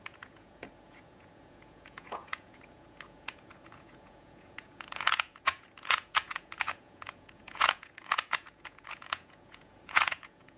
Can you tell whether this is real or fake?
fake